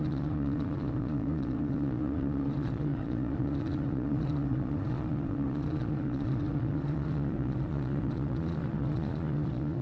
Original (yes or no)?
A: no